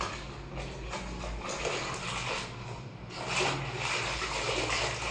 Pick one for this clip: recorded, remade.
recorded